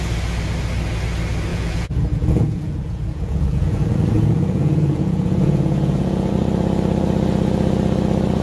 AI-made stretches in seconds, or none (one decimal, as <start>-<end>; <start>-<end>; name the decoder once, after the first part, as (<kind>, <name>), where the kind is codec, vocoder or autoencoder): 1.5-6.3 (vocoder, Vocos)